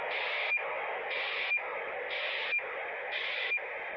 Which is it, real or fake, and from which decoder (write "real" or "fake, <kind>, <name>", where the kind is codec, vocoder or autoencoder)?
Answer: real